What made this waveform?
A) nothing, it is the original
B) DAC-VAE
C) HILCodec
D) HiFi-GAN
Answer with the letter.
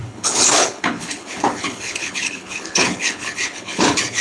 C